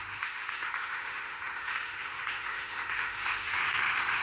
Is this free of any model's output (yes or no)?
no